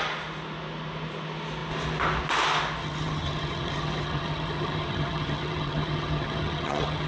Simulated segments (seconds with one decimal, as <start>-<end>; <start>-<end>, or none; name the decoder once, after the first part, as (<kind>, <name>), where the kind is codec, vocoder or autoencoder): 2.8-7.1 (vocoder, HiFi-GAN)